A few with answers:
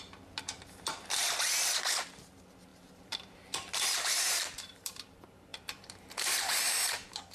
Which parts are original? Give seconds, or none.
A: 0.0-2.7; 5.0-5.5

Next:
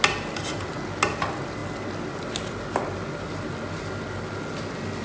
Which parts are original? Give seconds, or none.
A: 0.0-5.0

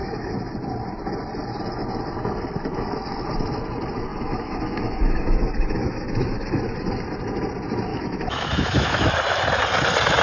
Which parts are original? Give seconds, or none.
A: 0.5-4.1; 6.6-7.9; 9.1-10.2

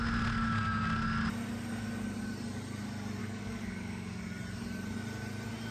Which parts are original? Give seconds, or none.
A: 0.0-3.2; 4.2-5.7

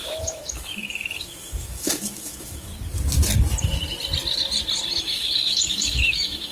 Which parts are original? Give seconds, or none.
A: 2.7-5.0